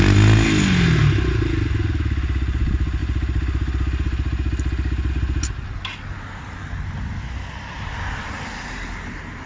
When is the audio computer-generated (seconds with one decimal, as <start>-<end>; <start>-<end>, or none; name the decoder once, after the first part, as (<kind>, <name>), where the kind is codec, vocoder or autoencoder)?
none